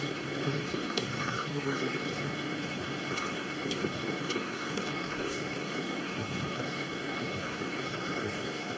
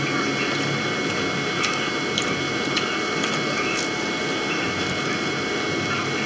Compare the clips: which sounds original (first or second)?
second